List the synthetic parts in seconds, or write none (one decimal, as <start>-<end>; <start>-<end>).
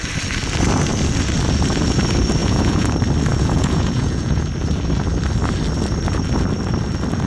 2.4-2.9; 3.3-4.5